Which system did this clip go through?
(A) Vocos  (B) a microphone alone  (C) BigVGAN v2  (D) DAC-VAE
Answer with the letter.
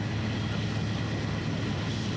B